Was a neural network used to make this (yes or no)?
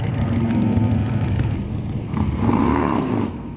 yes